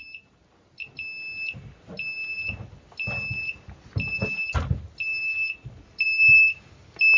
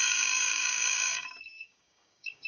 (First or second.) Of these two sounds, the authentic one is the first